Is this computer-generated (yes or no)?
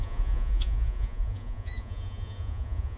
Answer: yes